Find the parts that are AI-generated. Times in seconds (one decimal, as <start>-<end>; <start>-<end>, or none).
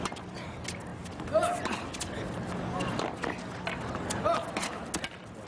none